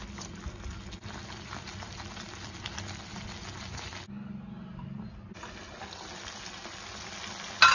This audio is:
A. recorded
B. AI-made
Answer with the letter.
A